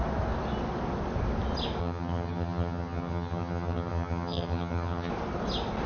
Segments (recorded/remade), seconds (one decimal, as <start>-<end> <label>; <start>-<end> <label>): 0.0-1.8 recorded; 1.8-5.1 remade; 5.1-5.9 recorded